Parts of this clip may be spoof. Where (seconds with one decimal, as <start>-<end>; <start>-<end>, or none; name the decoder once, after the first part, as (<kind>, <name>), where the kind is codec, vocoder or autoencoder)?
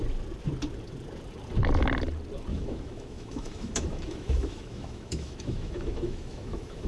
2.5-6.9 (autoencoder, DAC-VAE)